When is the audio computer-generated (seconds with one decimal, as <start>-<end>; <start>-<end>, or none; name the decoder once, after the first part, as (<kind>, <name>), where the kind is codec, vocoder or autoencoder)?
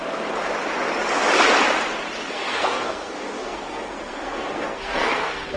2.2-5.6 (codec, SNAC)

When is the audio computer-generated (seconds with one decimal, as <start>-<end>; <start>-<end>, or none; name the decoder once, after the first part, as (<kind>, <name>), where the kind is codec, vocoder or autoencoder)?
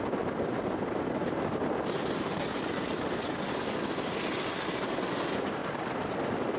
none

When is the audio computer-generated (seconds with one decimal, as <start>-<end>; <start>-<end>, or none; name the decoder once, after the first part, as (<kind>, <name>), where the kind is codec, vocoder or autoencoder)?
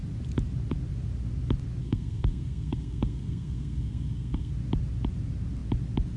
1.8-4.5 (codec, SNAC)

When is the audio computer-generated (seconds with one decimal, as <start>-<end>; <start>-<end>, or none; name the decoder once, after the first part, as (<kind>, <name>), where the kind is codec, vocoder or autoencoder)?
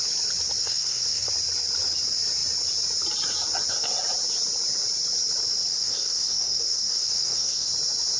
0.6-1.3 (codec, SNAC); 5.7-7.7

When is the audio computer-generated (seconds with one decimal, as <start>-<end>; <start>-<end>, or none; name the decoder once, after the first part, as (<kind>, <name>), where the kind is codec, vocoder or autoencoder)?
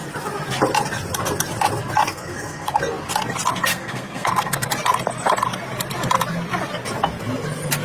2.1-2.8 (codec, SNAC); 3.7-4.7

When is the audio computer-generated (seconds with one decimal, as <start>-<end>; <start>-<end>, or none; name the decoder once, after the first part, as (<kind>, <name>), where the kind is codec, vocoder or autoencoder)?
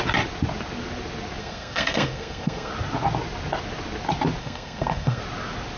1.4-2.7 (codec, SNAC); 4.4-5.2